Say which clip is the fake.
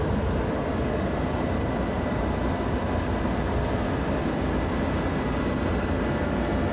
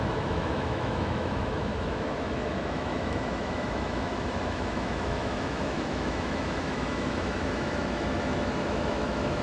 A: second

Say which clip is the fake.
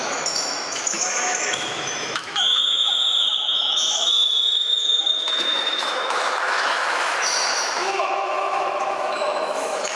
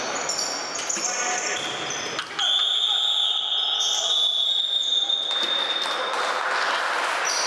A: first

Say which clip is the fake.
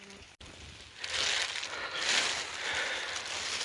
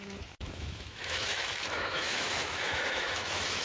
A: second